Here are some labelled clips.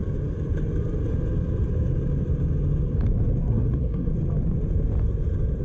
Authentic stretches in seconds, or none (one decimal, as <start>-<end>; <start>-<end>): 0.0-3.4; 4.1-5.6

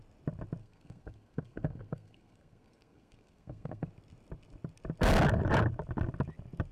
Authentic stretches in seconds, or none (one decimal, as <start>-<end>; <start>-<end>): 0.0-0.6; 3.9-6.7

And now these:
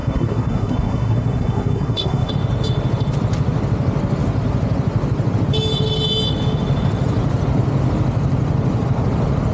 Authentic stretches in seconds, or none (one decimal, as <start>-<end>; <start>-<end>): 2.3-9.5

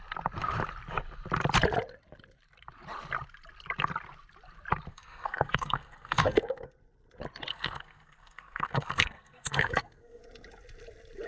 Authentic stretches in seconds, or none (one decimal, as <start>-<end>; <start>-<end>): 0.0-4.9; 6.7-7.5; 10.2-11.3